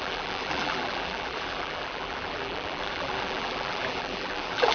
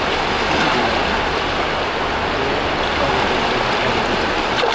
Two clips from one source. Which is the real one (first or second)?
second